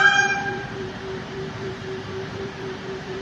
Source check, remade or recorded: remade